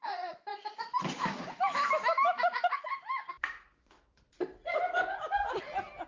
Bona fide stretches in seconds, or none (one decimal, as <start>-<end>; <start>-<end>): 0.0-0.5; 4.2-6.1